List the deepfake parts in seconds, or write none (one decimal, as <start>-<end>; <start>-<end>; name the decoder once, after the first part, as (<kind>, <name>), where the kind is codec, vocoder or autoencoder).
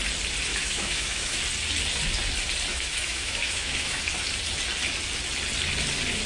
0.5-1.4 (autoencoder, DAC-VAE); 2.7-4.0